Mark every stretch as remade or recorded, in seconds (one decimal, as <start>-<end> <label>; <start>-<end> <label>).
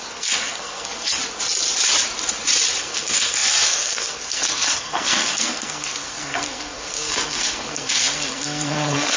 0.0-1.2 remade; 1.2-2.8 recorded; 2.8-9.2 remade